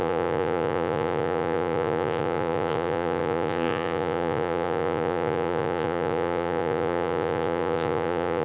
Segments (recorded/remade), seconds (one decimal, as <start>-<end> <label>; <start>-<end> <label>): 0.0-8.4 remade